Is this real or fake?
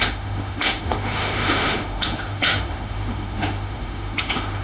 fake